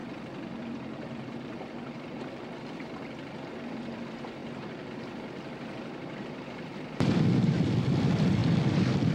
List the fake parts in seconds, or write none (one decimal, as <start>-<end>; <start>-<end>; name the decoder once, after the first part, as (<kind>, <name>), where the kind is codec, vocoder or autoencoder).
0.6-9.1 (vocoder, BigVGAN v2)